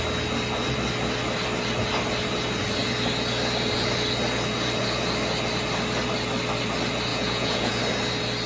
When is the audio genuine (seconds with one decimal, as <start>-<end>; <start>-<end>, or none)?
0.0-7.1; 7.8-8.5